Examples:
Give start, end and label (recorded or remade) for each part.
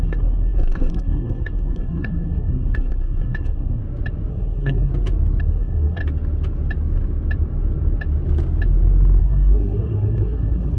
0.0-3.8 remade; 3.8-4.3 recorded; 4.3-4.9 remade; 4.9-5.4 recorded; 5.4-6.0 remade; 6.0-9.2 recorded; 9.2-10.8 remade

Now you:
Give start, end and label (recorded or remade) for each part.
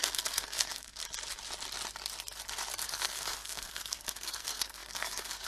0.0-1.0 remade; 1.0-2.8 recorded; 2.8-5.5 remade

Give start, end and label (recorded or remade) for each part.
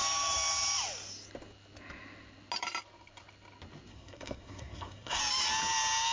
0.0-3.9 recorded; 3.9-5.2 remade; 5.2-6.1 recorded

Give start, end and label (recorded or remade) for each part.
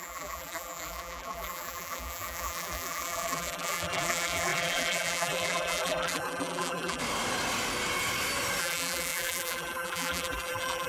0.0-7.0 remade; 7.0-8.6 recorded; 8.6-10.9 remade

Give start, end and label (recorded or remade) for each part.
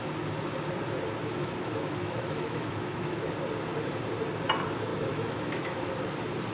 0.0-1.4 recorded; 1.4-3.3 remade; 3.3-4.9 recorded; 4.9-5.8 remade; 5.8-6.5 recorded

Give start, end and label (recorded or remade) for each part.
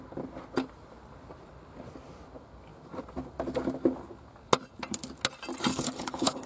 0.0-5.7 recorded; 5.7-6.5 remade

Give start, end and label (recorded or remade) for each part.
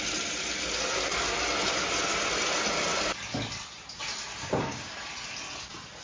0.0-4.3 recorded; 4.3-4.9 remade; 4.9-6.0 recorded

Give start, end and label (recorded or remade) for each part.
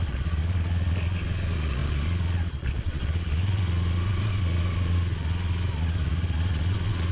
0.0-7.1 remade